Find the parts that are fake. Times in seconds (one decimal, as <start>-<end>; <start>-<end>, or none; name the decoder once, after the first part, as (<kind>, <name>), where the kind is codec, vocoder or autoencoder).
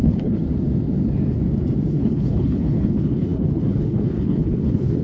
0.0-0.4 (codec, HILCodec); 1.9-5.0